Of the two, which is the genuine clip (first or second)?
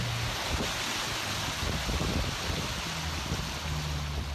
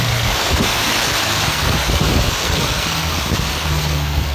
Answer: first